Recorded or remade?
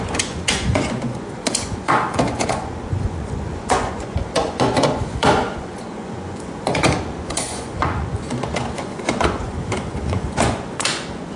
remade